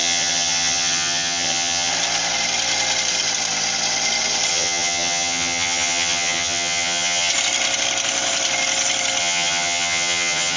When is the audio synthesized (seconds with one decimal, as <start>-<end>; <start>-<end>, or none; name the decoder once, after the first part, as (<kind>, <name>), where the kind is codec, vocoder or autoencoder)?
0.0-1.9 (vocoder, HiFi-GAN); 4.5-7.3; 9.2-10.6